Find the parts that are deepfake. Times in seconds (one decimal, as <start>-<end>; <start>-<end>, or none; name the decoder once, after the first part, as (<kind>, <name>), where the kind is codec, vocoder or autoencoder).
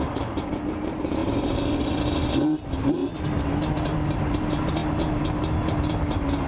0.0-1.2 (vocoder, BigVGAN v2); 2.0-3.0; 3.7-6.5